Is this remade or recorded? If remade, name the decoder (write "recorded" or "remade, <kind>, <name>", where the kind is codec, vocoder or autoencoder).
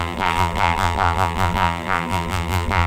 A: remade, vocoder, BigVGAN v2